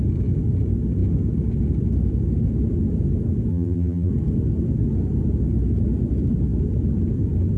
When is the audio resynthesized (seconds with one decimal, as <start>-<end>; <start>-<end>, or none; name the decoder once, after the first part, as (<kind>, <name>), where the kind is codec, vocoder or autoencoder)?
3.5-4.1 (vocoder, BigVGAN v2)